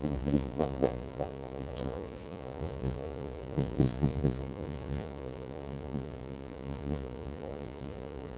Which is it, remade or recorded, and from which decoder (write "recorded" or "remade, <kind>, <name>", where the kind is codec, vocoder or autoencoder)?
remade, vocoder, Vocos